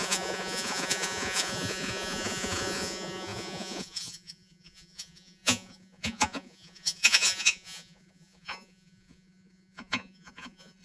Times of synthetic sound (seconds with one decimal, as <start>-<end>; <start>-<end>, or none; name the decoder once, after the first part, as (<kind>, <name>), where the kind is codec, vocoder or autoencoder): 0.0-10.8 (vocoder, Vocos)